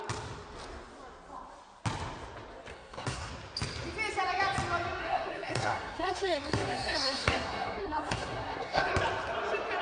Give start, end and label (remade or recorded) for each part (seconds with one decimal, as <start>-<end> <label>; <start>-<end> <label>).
0.0-2.7 recorded; 2.7-3.3 remade; 3.3-5.0 recorded; 5.0-8.9 remade; 8.9-9.8 recorded